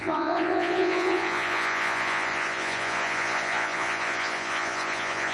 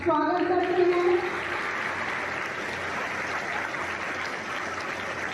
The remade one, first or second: first